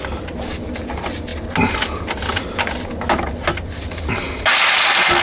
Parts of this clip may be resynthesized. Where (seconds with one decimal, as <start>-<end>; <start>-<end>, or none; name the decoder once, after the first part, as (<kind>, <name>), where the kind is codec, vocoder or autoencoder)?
none